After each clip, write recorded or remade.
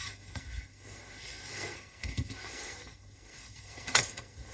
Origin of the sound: remade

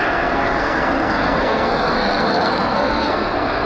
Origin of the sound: remade